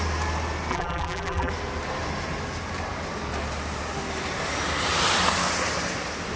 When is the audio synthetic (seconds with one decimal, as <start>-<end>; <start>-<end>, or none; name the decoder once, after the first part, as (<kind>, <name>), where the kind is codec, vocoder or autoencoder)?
0.7-1.5 (vocoder, BigVGAN v2)